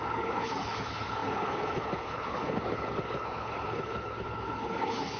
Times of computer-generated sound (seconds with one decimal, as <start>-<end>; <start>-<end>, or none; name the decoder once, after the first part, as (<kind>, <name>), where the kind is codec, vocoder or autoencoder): 0.0-5.2 (codec, HILCodec)